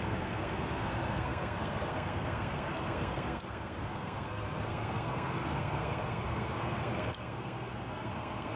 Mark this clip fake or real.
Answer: fake